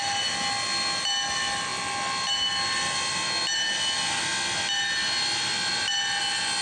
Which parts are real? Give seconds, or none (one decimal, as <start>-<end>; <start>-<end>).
0.0-6.6